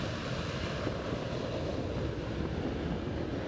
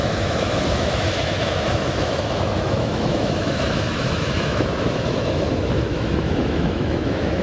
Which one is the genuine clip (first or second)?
first